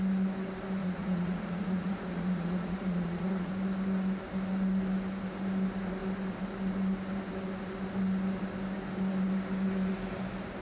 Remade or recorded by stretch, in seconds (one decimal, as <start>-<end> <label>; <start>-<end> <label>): 0.0-0.8 recorded; 0.8-3.5 remade; 3.5-10.6 recorded